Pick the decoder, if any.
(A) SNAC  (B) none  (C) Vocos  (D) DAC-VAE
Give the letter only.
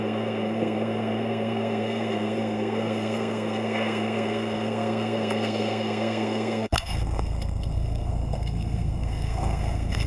A